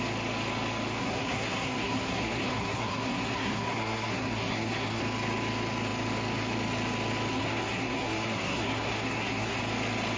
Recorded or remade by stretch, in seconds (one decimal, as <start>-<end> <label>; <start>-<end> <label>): 0.0-1.0 recorded; 1.0-5.0 remade; 5.0-7.3 recorded; 7.3-9.6 remade; 9.6-10.2 recorded